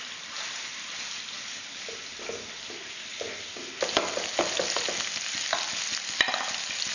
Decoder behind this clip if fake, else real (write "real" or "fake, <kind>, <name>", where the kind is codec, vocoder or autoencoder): real